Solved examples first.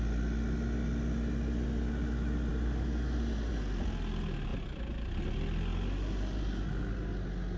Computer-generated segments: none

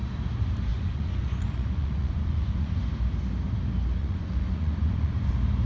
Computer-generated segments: 0.7-2.8 (vocoder, Vocos); 4.0-5.3